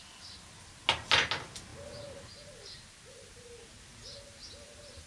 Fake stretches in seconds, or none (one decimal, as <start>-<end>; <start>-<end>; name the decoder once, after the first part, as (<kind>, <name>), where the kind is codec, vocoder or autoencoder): none

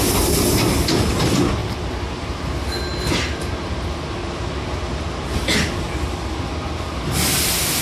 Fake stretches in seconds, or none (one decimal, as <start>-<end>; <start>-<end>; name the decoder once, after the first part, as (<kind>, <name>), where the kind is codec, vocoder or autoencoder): none